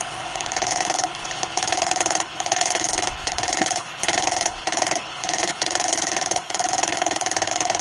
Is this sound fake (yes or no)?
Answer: yes